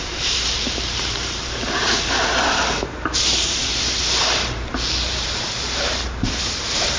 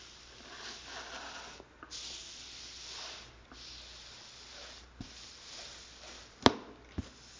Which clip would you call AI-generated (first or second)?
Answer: first